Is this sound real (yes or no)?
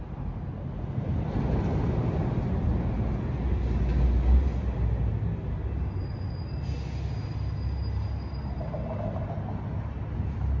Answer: yes